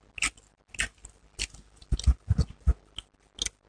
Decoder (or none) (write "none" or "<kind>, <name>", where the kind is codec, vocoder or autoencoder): none